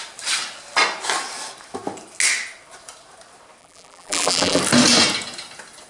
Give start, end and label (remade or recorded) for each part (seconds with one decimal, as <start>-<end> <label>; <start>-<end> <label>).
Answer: 0.0-3.6 recorded; 3.6-4.6 remade; 4.6-5.9 recorded